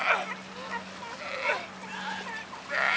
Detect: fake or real real